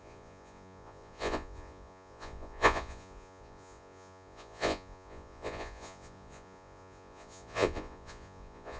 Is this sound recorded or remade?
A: remade